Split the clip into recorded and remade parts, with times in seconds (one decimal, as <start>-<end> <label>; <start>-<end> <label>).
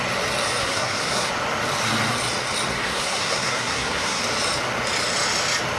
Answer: 0.0-0.6 recorded; 0.6-1.3 remade; 1.3-2.7 recorded; 2.7-4.2 remade; 4.2-5.8 recorded